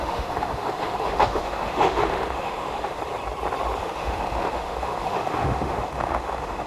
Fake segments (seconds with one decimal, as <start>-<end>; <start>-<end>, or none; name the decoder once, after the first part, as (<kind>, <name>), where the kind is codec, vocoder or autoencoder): 0.0-3.0 (autoencoder, DAC-VAE); 3.8-6.7